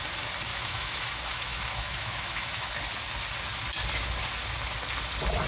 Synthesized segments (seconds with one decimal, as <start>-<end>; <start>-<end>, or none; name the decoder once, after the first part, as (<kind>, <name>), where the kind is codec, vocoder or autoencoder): 0.5-2.7 (autoencoder, DAC-VAE)